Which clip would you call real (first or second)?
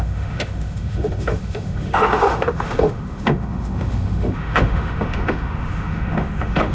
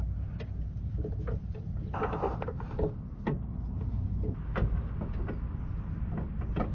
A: second